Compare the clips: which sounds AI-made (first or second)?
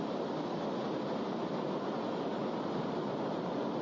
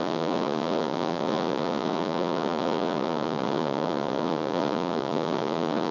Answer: second